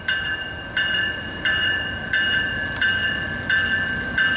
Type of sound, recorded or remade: recorded